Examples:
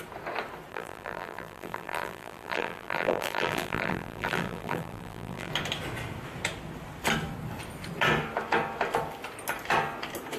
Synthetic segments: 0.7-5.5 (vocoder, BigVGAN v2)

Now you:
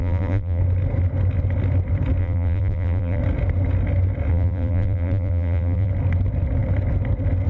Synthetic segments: 0.0-0.6 (vocoder, BigVGAN v2); 2.2-3.2; 4.3-5.9